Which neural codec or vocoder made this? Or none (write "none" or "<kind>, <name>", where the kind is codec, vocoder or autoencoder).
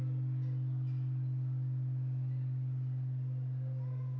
none